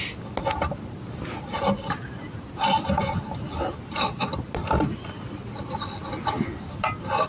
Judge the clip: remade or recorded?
recorded